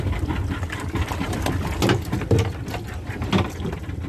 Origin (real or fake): real